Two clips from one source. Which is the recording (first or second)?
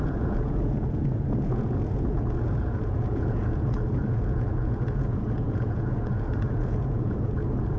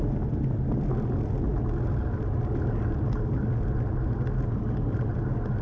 second